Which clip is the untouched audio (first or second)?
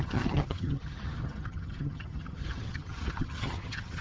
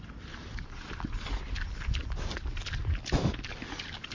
second